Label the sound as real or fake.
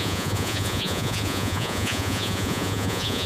fake